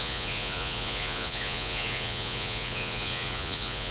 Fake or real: fake